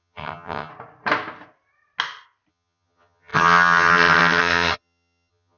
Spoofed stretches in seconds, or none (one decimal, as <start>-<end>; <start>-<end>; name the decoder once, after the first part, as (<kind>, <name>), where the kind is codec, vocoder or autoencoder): 0.0-0.7 (vocoder, HiFi-GAN); 2.5-5.6